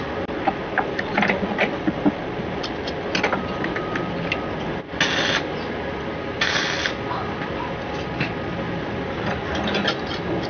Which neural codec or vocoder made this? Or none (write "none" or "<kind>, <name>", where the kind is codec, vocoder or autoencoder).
none